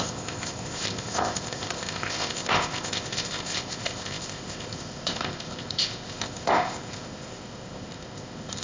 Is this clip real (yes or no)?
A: no